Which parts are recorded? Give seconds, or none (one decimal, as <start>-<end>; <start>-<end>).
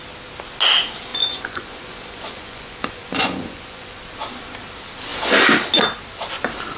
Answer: 0.0-1.1; 4.0-6.8